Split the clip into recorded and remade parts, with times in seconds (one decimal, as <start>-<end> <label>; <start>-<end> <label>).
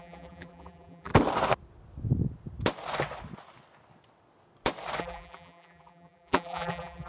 0.0-1.1 remade; 1.1-5.0 recorded; 5.0-7.1 remade